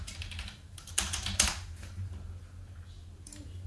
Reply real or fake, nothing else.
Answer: fake